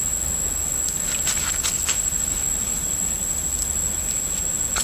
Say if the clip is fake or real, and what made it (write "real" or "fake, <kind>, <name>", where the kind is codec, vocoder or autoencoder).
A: real